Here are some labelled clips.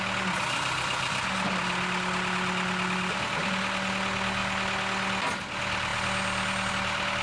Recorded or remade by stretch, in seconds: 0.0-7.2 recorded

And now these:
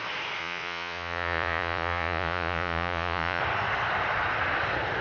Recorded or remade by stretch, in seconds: 0.0-0.4 recorded; 0.4-3.4 remade; 3.4-5.0 recorded

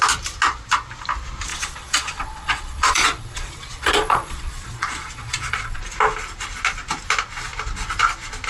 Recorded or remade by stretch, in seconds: 0.0-1.5 recorded; 1.5-5.8 remade; 5.8-8.5 recorded

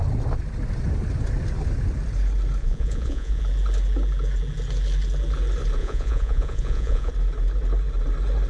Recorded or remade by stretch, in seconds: 0.0-2.6 recorded; 2.6-3.4 remade; 3.4-5.8 recorded; 5.8-7.1 remade; 7.1-8.5 recorded

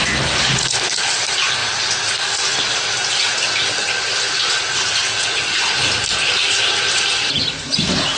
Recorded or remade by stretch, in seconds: 0.0-0.5 recorded; 0.5-1.1 remade; 1.1-8.2 recorded